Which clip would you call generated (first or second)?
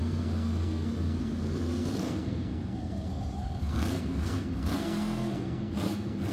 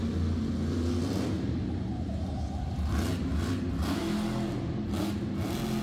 first